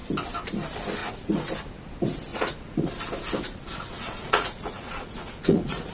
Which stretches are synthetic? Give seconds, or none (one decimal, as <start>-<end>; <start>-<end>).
1.0-1.5; 2.3-2.9; 3.9-5.9